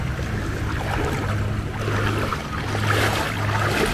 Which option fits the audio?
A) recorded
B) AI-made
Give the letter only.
A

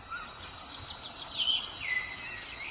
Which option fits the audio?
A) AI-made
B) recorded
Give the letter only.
B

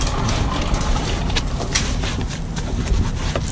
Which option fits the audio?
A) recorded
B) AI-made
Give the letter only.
A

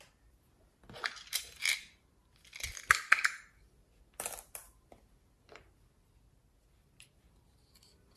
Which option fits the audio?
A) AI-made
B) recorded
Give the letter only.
B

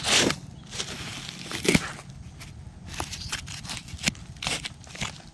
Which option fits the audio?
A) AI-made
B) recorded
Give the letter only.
B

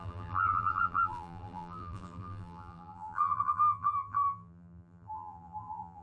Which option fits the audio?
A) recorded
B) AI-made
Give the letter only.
B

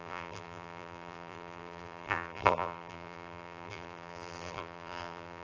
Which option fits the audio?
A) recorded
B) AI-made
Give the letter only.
B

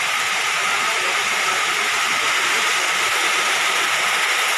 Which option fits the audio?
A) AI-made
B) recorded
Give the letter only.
A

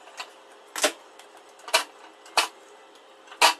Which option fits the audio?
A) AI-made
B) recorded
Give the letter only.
B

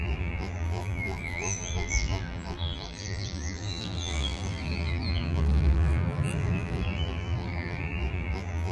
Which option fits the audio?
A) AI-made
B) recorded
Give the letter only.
A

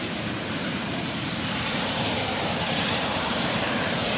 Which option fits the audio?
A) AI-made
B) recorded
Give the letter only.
A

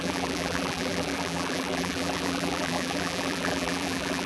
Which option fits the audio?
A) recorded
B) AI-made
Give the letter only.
B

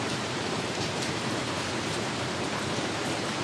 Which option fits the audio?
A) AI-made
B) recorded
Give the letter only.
A